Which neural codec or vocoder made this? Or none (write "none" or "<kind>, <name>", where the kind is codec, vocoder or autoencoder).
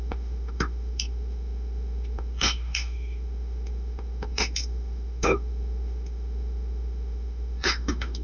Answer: autoencoder, DAC-VAE